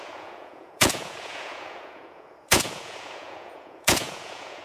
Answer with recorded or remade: remade